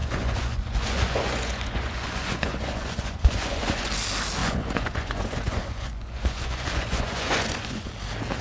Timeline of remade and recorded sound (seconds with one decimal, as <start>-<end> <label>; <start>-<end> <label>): 0.0-3.9 remade; 3.9-4.4 recorded; 4.4-7.9 remade; 7.9-8.4 recorded